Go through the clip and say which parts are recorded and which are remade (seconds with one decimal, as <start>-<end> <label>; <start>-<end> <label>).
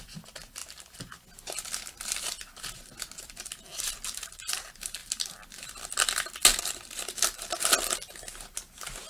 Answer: 0.0-9.1 recorded